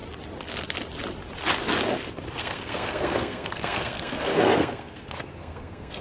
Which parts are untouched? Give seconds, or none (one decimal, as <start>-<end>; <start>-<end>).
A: 0.0-2.4